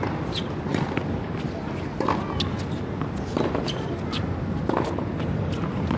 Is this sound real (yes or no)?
yes